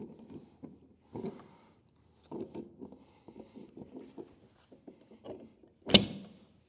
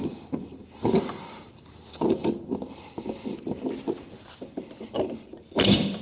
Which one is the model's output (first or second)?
second